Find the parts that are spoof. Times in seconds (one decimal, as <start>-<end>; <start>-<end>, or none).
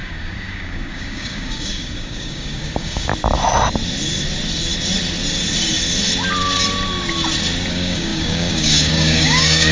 0.0-3.1; 7.7-9.7